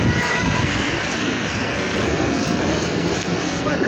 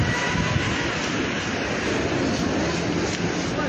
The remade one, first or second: first